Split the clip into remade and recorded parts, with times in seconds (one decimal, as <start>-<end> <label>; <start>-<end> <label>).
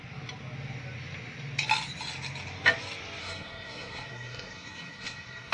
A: 0.0-3.2 recorded; 3.2-5.5 remade